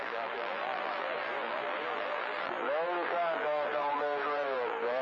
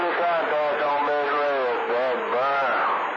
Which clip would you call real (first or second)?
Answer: second